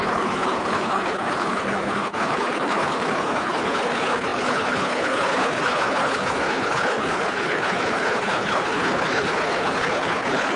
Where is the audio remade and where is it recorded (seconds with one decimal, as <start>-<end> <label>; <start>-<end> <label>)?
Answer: 0.0-10.6 remade